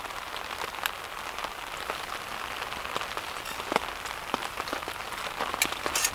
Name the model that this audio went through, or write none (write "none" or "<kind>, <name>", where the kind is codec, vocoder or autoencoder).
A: none